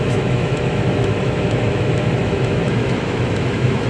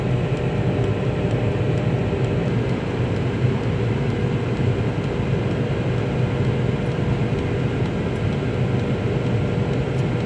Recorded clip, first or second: second